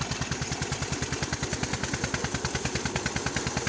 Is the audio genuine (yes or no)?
yes